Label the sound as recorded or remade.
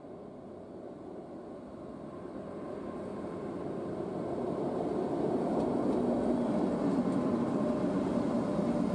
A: recorded